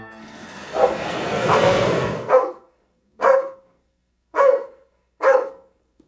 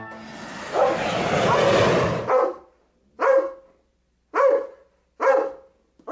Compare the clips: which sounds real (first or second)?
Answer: second